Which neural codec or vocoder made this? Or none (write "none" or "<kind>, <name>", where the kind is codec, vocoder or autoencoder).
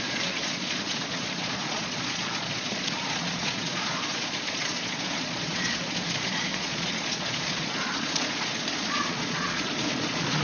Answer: vocoder, Vocos